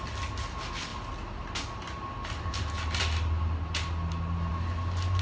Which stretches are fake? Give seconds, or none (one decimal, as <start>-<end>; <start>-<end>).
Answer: none

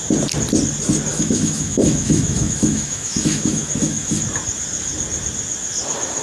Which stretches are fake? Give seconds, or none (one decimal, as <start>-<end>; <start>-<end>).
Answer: 1.1-4.2

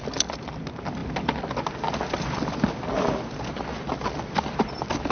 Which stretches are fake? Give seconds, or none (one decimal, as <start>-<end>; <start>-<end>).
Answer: none

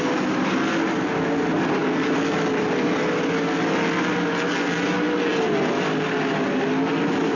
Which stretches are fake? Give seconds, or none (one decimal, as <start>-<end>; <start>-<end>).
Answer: none

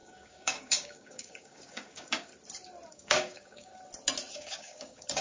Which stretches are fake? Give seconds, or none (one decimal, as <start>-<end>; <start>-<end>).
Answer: 0.0-2.3; 2.9-3.7; 4.3-5.2

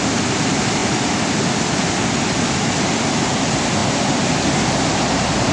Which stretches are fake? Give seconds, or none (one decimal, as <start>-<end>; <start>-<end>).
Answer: none